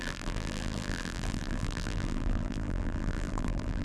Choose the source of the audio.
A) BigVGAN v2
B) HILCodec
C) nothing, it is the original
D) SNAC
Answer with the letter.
A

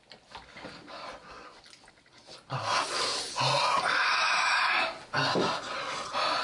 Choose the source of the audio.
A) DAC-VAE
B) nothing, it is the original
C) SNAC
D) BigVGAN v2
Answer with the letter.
B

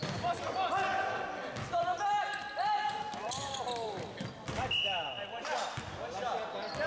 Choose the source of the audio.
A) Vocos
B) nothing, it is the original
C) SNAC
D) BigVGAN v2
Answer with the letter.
B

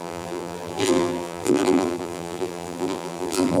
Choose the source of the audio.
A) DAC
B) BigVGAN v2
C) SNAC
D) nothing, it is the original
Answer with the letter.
B